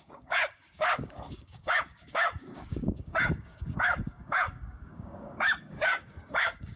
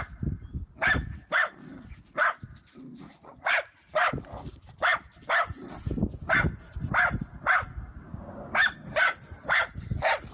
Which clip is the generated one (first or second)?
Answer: first